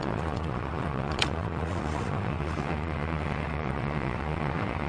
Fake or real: fake